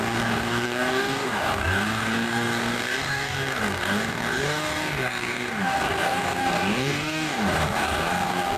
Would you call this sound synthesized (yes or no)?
yes